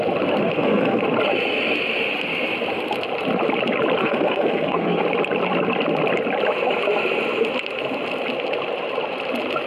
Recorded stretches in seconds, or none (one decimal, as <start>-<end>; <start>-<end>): 0.0-0.4; 1.0-4.0; 5.0-9.7